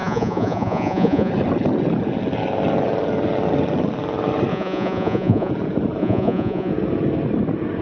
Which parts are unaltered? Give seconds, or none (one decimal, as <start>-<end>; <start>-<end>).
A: 1.3-4.5; 5.5-6.0; 6.7-7.8